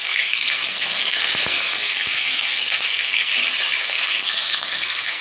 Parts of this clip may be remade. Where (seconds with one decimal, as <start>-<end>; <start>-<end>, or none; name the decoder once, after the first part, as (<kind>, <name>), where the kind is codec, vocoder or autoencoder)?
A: 0.0-3.3 (codec, SNAC); 3.8-5.2